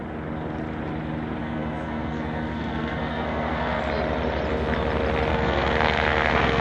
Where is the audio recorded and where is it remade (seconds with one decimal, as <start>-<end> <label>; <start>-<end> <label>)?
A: 0.0-1.4 recorded; 1.4-3.8 remade; 3.8-5.3 recorded; 5.3-6.6 remade